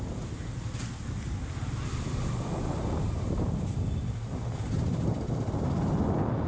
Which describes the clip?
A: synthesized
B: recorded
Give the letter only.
B